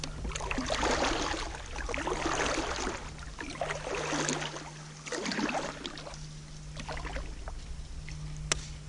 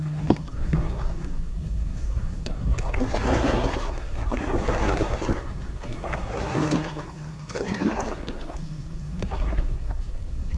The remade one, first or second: second